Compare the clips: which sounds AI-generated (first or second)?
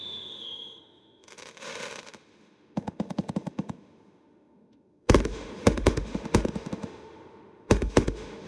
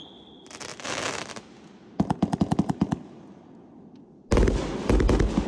first